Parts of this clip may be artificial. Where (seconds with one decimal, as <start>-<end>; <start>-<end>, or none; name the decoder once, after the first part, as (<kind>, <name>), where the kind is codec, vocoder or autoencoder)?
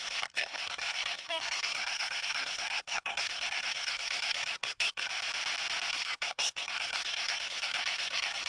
0.0-5.1 (codec, SNAC); 5.9-8.5